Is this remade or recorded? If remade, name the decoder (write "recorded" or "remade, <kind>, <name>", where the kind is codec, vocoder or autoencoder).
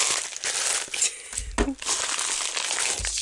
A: recorded